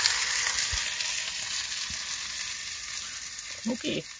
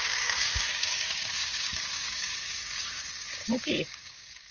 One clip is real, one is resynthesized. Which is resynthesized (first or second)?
second